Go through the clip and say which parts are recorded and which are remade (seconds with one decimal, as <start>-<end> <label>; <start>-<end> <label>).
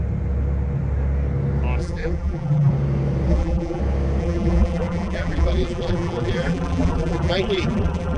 0.0-1.8 recorded; 1.8-2.7 remade; 2.7-3.3 recorded; 3.3-3.8 remade; 3.8-4.2 recorded; 4.2-8.2 remade